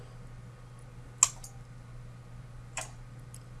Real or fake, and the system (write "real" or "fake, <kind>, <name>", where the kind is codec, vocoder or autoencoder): real